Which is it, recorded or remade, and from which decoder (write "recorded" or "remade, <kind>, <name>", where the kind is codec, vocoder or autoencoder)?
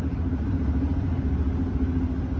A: recorded